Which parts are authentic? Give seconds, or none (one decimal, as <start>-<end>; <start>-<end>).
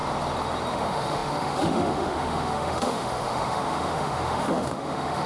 0.0-0.7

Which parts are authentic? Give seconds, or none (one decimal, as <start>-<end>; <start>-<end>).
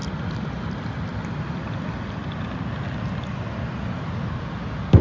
0.0-5.0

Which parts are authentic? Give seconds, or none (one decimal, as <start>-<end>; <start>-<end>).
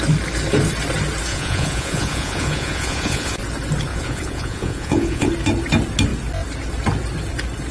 0.0-1.3; 3.4-3.9; 5.3-7.7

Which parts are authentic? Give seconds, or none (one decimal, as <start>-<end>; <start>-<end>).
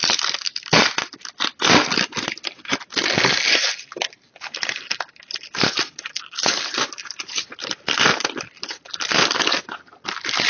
0.0-10.5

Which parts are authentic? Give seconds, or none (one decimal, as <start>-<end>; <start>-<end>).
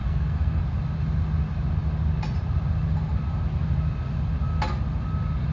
0.6-5.5